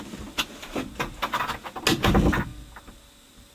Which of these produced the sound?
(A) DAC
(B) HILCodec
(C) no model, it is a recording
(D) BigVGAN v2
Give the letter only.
C